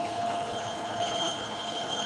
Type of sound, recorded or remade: remade